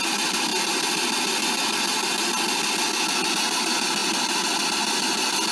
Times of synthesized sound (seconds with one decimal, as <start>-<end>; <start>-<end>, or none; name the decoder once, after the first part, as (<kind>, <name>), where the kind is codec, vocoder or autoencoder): none